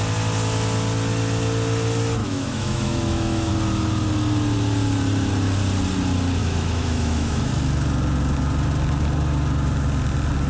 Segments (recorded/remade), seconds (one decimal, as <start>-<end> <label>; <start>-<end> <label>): 0.0-2.2 recorded; 2.2-3.5 remade; 3.5-6.4 recorded; 6.4-7.5 remade; 7.5-10.5 recorded

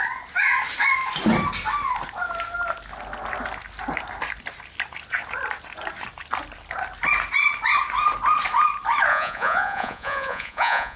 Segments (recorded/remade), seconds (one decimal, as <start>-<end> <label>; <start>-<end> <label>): 0.0-9.1 recorded; 9.1-11.0 remade

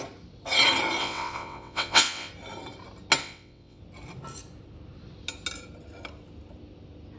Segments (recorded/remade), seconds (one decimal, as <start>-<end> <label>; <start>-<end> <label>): 0.0-1.0 recorded; 1.0-2.3 remade; 2.3-3.2 recorded; 3.2-3.8 remade; 3.8-7.2 recorded

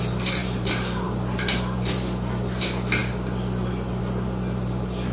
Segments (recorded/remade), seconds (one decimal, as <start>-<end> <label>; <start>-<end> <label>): 0.0-0.4 recorded; 0.4-1.1 remade; 1.1-5.1 recorded